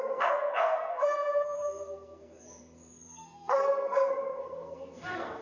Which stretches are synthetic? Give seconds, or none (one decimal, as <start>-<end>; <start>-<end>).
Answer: 0.0-5.4